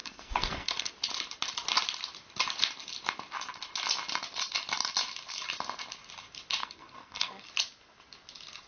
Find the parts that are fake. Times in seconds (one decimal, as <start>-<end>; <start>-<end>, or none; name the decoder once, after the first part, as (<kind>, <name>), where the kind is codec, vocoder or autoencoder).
0.0-0.9 (codec, SNAC); 6.6-7.5